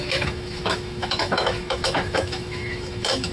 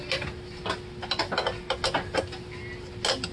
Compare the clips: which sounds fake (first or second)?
first